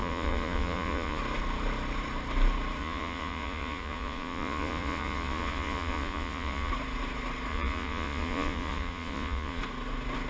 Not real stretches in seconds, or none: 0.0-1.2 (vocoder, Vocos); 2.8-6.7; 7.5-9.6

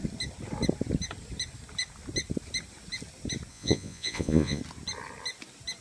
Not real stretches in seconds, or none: 3.5-4.6 (vocoder, Vocos)

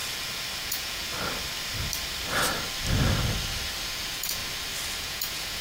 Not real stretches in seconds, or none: 0.6-1.1 (vocoder, Vocos); 3.9-4.4; 5.0-5.6

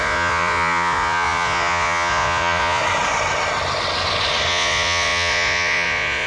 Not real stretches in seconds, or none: 0.0-2.8 (vocoder, Vocos); 4.5-6.3